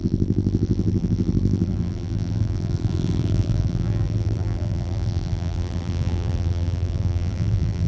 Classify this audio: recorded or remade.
remade